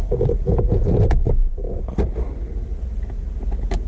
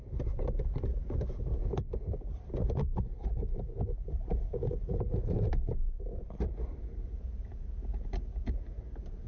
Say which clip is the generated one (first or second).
second